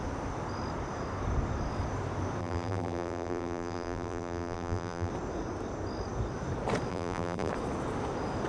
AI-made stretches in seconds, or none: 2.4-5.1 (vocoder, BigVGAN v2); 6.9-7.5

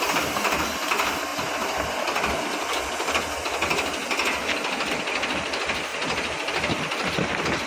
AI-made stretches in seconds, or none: none

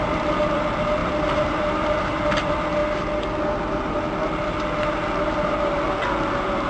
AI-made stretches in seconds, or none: 0.0-2.8 (vocoder, BigVGAN v2); 6.0-6.7

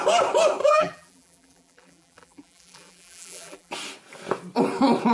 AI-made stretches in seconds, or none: 0.6-3.7 (vocoder, BigVGAN v2)